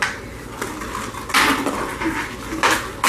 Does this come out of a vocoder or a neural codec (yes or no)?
no